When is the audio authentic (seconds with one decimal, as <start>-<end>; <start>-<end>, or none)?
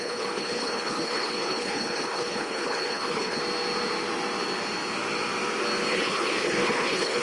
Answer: 3.4-5.9